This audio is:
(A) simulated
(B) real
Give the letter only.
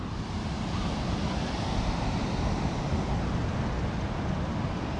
B